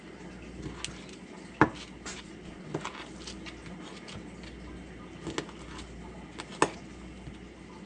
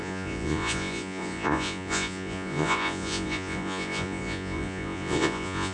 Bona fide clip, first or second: first